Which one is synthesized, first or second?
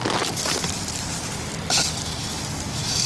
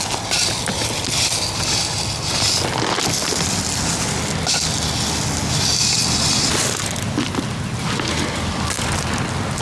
first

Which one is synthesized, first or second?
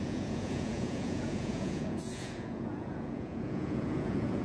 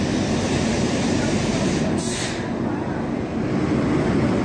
first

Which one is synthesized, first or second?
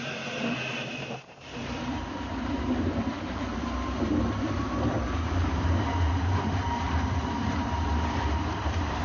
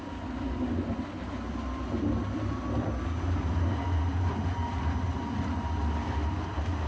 first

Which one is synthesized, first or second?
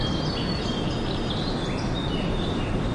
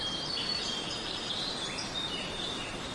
second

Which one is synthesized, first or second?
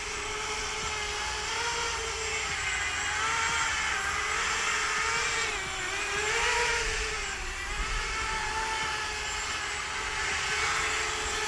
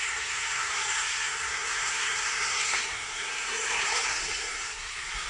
second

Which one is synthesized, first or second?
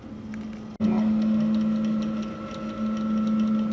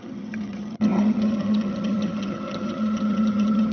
second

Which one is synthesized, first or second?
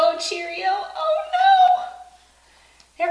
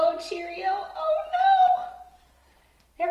second